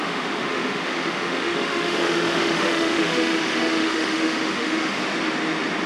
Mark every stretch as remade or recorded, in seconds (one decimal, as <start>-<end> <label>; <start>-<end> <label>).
0.0-5.0 remade; 5.0-5.9 recorded